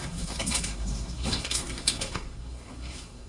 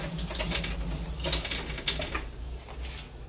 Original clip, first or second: second